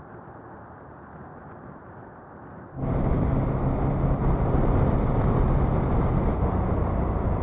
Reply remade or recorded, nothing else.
recorded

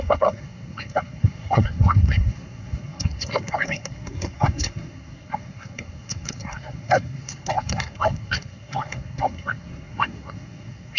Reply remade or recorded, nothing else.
remade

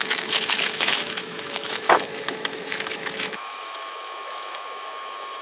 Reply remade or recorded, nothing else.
remade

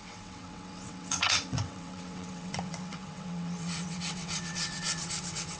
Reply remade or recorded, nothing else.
remade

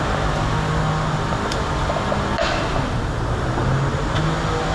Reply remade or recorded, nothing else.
recorded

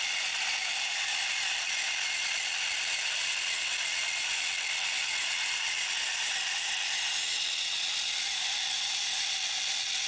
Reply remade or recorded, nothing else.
recorded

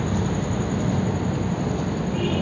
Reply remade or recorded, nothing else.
recorded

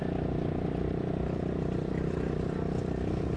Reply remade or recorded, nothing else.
recorded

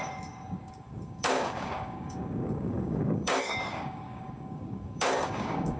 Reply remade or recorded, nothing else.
remade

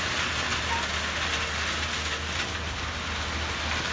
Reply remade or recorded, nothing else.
recorded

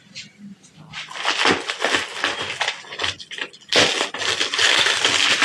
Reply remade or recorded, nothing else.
recorded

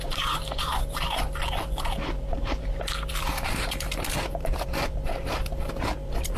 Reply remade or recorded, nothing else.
remade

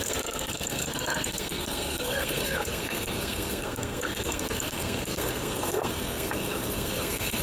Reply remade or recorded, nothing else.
remade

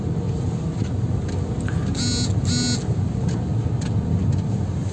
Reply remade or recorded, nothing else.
recorded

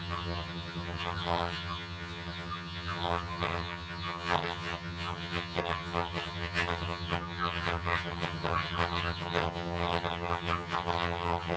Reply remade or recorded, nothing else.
remade